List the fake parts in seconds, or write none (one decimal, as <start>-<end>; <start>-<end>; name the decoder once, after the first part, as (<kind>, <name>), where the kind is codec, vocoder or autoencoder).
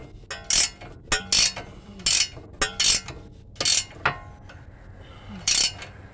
none